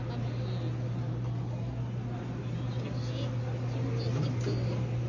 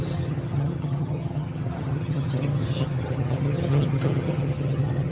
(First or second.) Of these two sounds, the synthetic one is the second